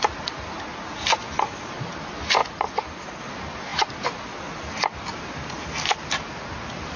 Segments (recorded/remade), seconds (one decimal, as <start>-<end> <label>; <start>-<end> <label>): 0.0-2.4 recorded; 2.4-3.2 remade; 3.2-7.0 recorded